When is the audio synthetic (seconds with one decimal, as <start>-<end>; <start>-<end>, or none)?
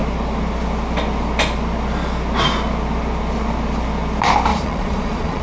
4.5-5.4